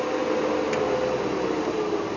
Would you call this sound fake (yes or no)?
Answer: no